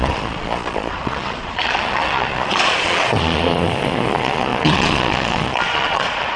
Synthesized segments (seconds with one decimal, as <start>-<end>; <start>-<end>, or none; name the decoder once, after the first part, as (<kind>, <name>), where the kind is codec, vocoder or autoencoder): 0.0-6.4 (vocoder, Vocos)